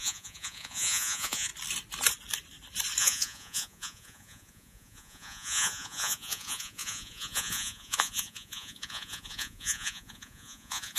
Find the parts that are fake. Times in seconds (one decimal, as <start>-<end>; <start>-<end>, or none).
0.0-1.5; 3.0-11.0